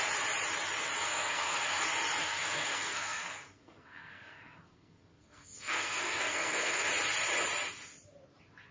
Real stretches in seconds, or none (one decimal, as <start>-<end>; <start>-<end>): 0.0-1.0; 1.8-2.2; 6.9-8.7